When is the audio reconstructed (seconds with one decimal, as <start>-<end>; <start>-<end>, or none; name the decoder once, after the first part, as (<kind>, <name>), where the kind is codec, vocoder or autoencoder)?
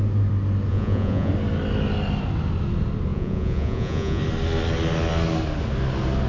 0.7-1.3 (vocoder, Vocos); 3.1-4.2